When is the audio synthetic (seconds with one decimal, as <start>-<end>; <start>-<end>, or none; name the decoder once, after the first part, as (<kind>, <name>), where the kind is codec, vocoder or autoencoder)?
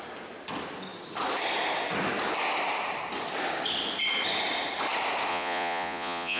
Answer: 5.3-6.4 (vocoder, Vocos)